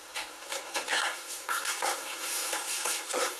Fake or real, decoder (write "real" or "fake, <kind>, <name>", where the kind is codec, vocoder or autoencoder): fake, codec, SNAC